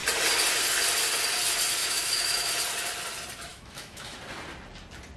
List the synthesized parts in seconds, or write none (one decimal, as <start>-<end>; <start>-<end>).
1.8-2.6; 3.5-4.2